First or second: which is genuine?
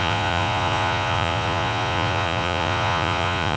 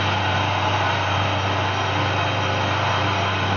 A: second